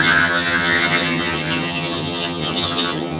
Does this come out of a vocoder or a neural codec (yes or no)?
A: yes